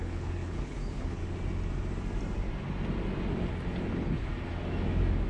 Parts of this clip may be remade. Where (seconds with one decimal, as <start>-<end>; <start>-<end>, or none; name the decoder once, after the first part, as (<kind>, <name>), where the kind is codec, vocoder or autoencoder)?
0.0-1.2 (codec, HILCodec); 3.9-4.3